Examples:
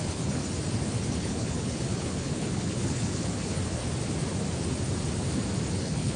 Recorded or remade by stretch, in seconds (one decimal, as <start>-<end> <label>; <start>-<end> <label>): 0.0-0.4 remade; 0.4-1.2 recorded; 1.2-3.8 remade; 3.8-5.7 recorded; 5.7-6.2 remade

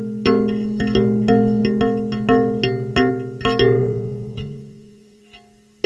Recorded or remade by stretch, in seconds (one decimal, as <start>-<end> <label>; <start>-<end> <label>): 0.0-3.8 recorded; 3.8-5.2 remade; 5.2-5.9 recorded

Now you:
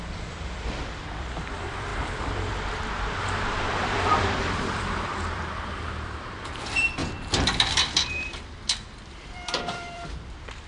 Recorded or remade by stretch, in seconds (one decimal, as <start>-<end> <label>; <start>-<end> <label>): 0.0-7.0 remade; 7.0-7.7 recorded; 7.7-10.7 remade

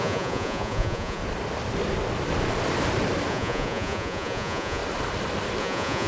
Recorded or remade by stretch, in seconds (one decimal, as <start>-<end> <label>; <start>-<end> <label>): 0.0-1.2 remade; 1.2-3.3 recorded; 3.3-4.8 remade; 4.8-5.6 recorded; 5.6-6.1 remade

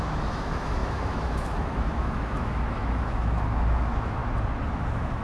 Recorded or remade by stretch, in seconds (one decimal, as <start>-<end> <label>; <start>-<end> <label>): 0.0-4.2 remade; 4.2-4.8 recorded; 4.8-5.2 remade

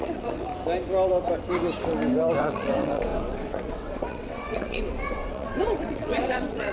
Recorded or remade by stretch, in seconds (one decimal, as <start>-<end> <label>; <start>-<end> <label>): 0.0-0.5 remade; 0.5-2.4 recorded; 2.4-6.7 remade